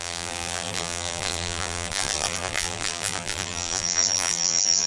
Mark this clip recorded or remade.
remade